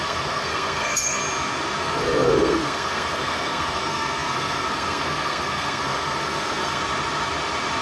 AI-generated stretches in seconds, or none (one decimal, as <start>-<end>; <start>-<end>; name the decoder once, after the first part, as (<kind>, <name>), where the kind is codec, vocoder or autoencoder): 0.0-1.2 (codec, SNAC); 1.8-6.8